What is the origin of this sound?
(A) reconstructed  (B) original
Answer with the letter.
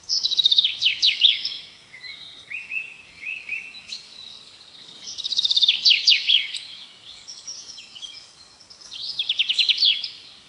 A